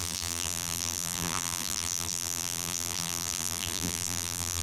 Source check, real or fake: fake